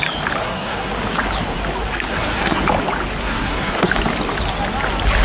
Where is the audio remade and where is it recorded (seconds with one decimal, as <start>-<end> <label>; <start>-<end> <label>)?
0.0-0.4 recorded; 0.4-0.9 remade; 0.9-2.1 recorded; 2.1-2.6 remade; 2.6-3.2 recorded; 3.2-3.9 remade; 3.9-5.2 recorded